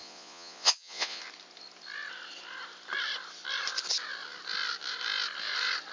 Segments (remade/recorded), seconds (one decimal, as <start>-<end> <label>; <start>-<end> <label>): 0.0-1.2 remade; 1.2-5.9 recorded